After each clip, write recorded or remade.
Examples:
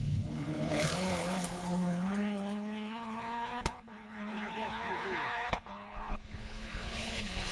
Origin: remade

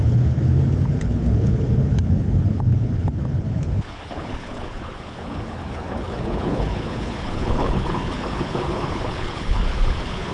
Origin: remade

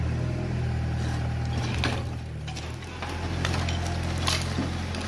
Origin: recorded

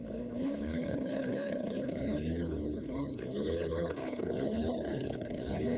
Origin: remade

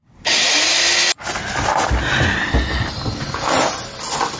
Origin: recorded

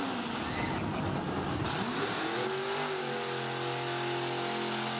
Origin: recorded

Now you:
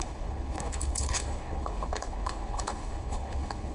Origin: remade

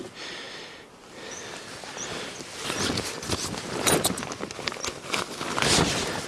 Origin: recorded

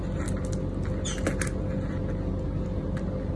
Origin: recorded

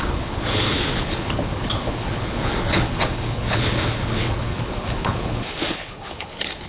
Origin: remade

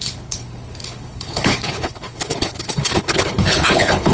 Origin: remade